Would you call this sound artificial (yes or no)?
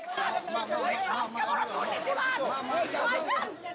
no